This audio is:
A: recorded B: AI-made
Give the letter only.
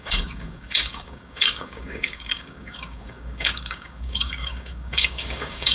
B